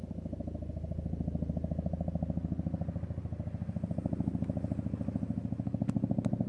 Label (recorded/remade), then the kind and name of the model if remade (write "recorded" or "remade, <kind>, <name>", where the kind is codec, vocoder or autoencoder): recorded